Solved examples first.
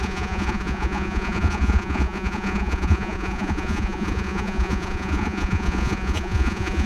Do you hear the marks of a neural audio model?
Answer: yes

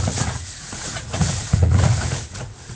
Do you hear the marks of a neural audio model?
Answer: yes